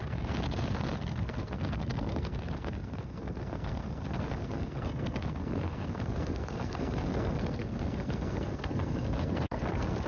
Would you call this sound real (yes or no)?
no